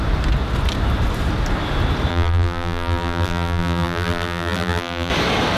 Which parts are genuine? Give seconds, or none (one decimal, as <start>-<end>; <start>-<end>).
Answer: 0.0-2.1; 5.1-5.6